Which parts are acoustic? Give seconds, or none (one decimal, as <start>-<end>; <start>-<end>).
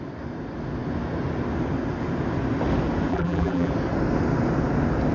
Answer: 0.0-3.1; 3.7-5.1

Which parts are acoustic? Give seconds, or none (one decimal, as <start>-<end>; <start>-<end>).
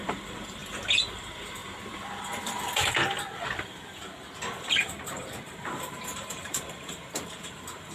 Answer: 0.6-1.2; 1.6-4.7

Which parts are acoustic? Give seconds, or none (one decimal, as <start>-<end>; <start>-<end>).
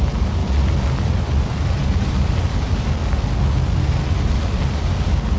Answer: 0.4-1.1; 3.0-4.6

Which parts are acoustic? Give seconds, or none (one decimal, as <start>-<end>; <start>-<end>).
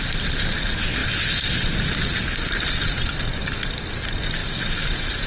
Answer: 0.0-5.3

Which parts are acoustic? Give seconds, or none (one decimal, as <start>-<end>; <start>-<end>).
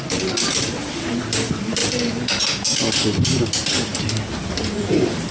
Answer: 0.0-1.8; 2.4-5.3